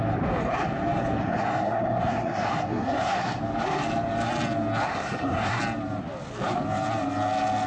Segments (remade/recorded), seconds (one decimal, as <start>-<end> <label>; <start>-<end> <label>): 0.0-1.2 recorded; 1.2-3.4 remade; 3.4-4.9 recorded; 4.9-5.6 remade; 5.6-7.7 recorded